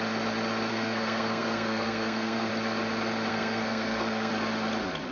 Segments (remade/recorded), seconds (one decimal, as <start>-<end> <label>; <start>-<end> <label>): 0.0-0.7 recorded; 0.7-2.5 remade; 2.5-3.3 recorded; 3.3-4.3 remade; 4.3-5.1 recorded